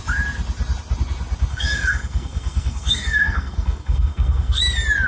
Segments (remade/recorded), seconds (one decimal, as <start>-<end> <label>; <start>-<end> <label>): 0.0-1.5 recorded; 1.5-4.6 remade; 4.6-5.1 recorded